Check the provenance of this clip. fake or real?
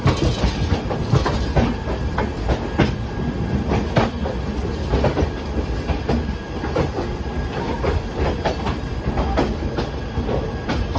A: real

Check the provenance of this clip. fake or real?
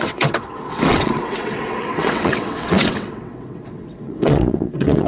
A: fake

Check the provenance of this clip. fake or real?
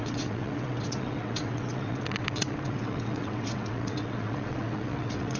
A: fake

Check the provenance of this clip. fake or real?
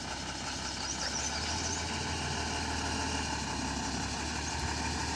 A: real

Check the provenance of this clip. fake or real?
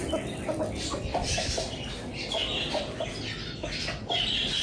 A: real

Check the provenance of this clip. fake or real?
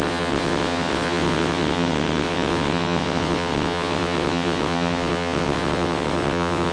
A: fake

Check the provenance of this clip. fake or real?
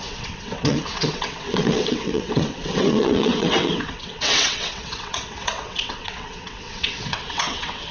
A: fake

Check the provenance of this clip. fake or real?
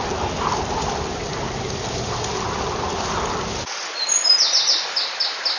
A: real